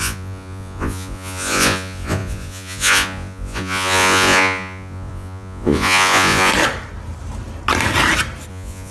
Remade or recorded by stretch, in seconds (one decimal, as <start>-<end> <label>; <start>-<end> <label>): 0.0-6.5 remade; 6.5-8.5 recorded; 8.5-8.9 remade